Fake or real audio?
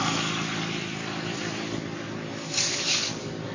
real